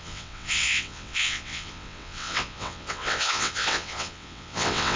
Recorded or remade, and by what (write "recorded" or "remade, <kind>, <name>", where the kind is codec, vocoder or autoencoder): remade, vocoder, WaveNeXt